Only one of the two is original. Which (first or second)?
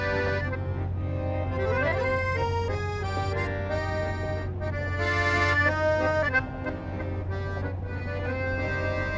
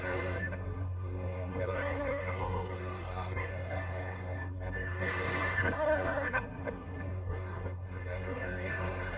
first